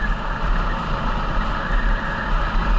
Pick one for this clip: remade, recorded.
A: recorded